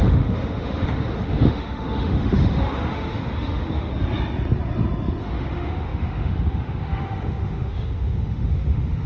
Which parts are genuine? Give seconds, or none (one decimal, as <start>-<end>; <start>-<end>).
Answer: 3.9-5.2